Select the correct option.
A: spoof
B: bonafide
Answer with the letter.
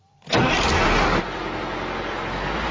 B